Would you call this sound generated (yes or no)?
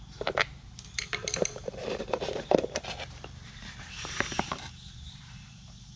yes